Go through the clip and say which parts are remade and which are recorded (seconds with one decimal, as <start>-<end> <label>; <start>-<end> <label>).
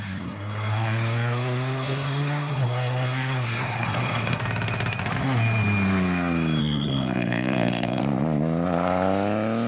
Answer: 0.0-4.4 remade; 4.4-6.6 recorded; 6.6-8.0 remade; 8.0-9.7 recorded